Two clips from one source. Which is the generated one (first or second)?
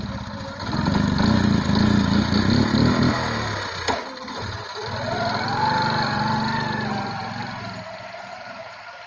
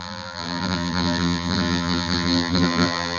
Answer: second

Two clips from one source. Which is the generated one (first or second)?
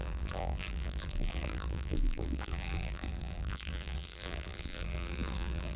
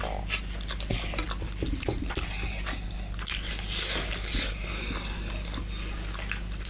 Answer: first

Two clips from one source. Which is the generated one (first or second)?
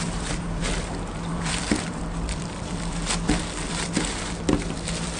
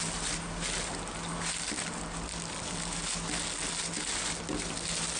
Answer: first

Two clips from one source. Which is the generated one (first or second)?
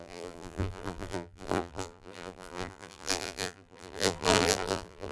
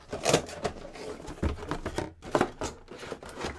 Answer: first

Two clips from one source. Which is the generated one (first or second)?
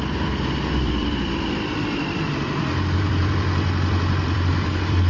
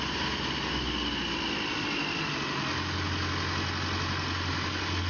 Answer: first